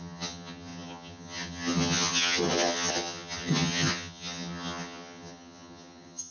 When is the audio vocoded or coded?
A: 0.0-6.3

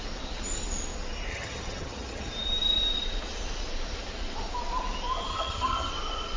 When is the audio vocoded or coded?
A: 1.3-2.3; 5.3-5.9

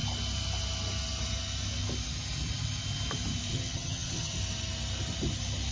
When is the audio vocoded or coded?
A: 3.5-4.3

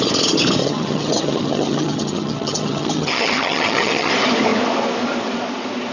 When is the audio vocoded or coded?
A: 0.6-4.1

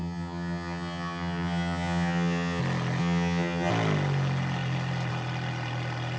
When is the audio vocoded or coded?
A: 0.0-2.6; 3.0-3.7

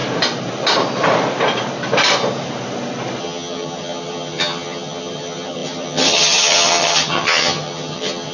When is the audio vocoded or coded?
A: 3.2-8.3

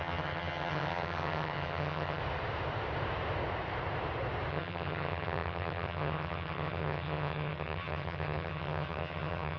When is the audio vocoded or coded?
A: 0.0-2.2; 4.5-9.6

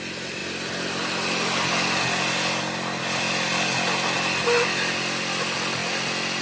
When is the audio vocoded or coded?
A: none